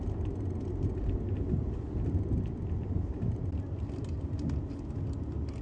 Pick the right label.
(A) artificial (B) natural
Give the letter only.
B